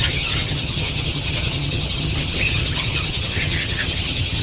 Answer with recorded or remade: remade